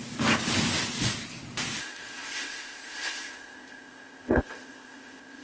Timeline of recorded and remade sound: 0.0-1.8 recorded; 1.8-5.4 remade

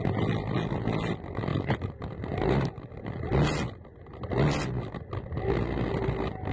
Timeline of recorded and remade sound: 0.0-6.5 recorded